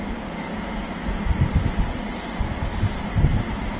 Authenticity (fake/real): real